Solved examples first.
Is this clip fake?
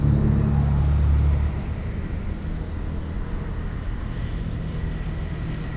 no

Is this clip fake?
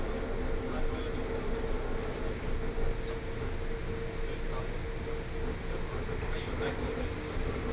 no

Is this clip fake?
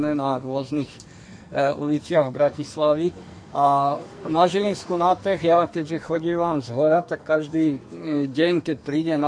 yes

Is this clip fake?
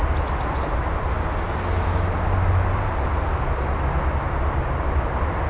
no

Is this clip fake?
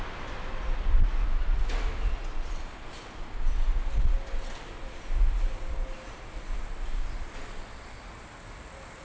no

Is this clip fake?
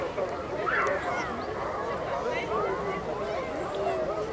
no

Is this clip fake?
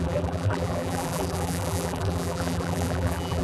yes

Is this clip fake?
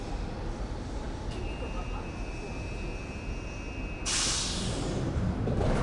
no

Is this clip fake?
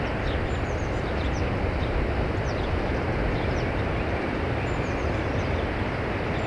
no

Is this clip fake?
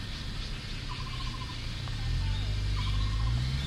no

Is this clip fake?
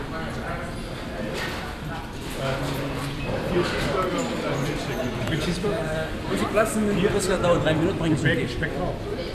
yes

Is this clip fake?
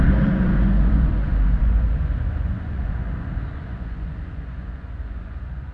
yes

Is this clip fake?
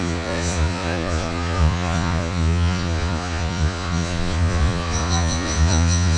yes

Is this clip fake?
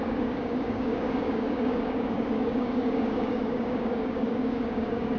yes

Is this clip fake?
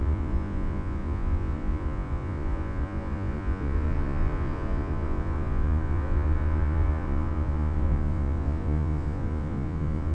yes